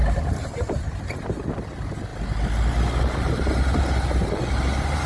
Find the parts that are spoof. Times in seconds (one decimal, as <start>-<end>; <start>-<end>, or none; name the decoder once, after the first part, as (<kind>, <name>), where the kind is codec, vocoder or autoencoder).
none